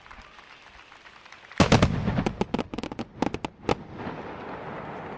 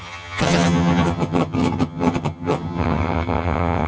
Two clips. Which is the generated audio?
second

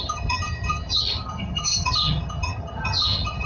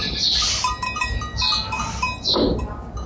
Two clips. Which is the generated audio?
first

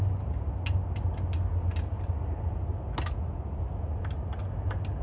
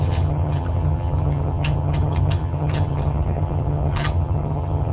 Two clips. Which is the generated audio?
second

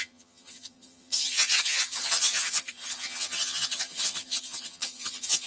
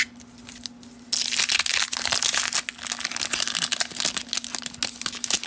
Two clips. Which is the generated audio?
first